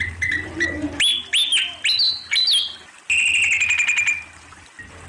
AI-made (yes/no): no